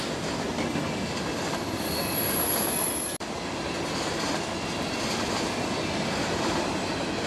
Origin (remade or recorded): recorded